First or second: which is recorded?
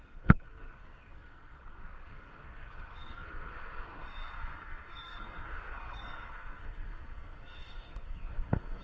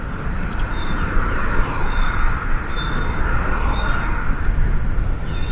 second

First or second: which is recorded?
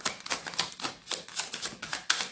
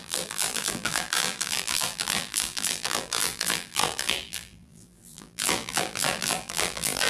first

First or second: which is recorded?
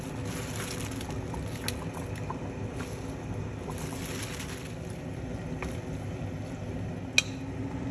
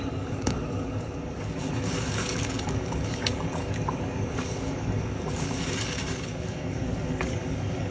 first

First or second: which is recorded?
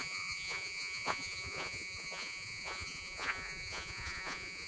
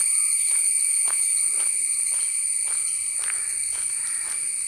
second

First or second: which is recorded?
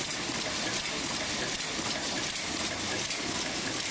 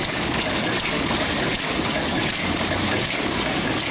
first